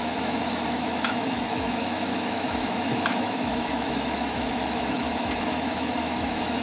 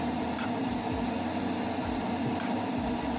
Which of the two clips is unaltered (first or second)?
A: second